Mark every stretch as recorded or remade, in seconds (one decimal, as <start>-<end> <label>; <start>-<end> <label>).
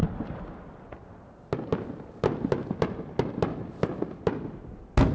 0.0-5.1 recorded